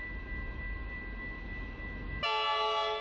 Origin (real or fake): real